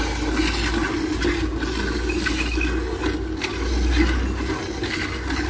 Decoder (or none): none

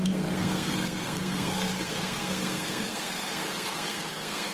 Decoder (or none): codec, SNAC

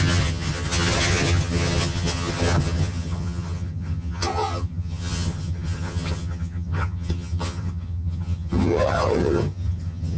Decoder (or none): vocoder, HiFi-GAN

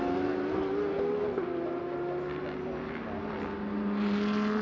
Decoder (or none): none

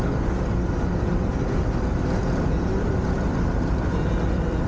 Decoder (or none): none